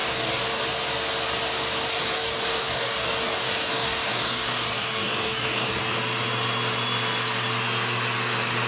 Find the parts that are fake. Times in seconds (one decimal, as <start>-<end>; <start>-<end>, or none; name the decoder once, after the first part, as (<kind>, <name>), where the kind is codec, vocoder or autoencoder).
0.0-0.6 (codec, DAC); 1.9-5.8